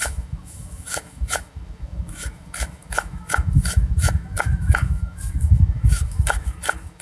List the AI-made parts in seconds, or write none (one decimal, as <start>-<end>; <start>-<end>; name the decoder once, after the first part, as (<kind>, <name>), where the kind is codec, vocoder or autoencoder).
0.0-7.0 (autoencoder, DAC-VAE)